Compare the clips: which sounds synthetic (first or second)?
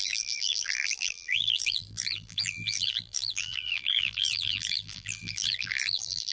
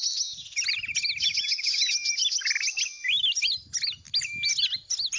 first